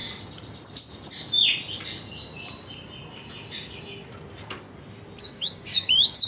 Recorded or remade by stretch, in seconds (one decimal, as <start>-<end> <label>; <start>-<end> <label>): 0.0-5.2 recorded; 5.2-6.3 remade